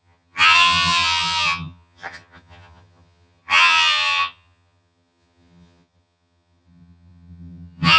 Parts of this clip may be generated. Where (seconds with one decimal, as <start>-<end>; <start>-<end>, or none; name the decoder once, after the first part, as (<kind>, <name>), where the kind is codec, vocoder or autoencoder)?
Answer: 0.0-8.0 (vocoder, HiFi-GAN)